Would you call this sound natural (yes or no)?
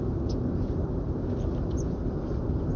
yes